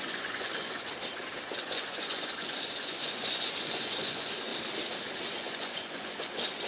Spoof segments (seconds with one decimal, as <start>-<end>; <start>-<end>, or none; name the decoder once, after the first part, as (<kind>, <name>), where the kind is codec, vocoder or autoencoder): 0.0-0.9 (vocoder, Vocos); 1.6-4.5; 5.4-6.7